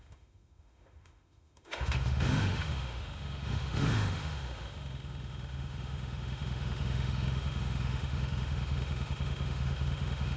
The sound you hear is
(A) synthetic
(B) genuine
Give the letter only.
A